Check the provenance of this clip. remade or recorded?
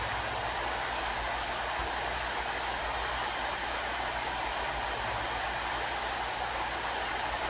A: recorded